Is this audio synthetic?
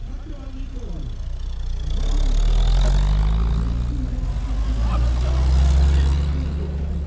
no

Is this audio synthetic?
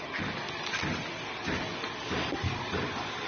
no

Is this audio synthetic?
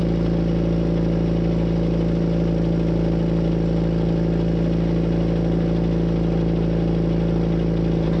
no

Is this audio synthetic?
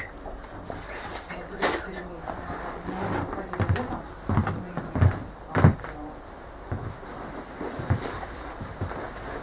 no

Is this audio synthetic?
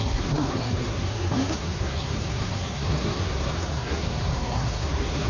yes